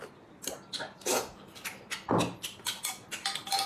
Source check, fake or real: real